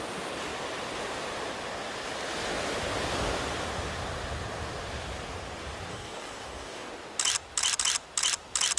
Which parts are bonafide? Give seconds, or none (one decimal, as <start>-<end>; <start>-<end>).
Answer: 0.0-5.9; 6.9-8.8